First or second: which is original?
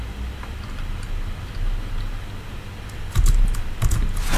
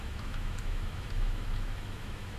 first